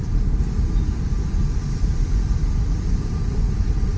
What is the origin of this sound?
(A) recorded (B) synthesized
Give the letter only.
A